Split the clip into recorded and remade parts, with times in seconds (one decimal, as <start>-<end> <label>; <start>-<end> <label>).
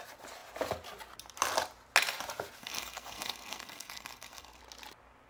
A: 0.0-2.6 recorded; 2.6-4.6 remade; 4.6-5.3 recorded